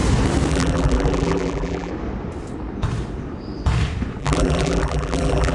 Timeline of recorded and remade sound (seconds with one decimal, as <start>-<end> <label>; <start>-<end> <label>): 0.0-0.5 recorded; 0.5-1.9 remade; 1.9-4.2 recorded; 4.2-5.5 remade